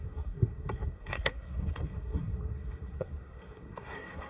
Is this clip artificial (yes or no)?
yes